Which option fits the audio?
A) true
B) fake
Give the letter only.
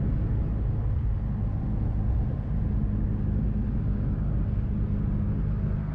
A